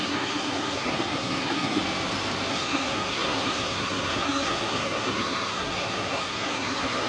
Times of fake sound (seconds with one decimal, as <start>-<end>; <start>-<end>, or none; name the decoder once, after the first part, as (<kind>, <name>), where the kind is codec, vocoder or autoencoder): 0.0-1.8 (codec, SNAC); 2.5-7.1